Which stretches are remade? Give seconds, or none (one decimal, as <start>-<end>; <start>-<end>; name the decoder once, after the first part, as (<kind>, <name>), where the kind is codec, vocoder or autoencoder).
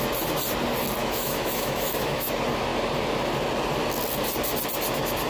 1.0-2.3 (autoencoder, DAC-VAE)